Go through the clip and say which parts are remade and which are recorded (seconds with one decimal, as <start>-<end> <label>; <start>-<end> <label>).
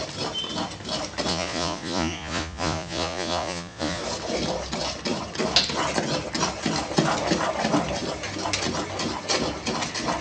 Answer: 0.0-1.3 recorded; 1.3-4.0 remade; 4.0-10.2 recorded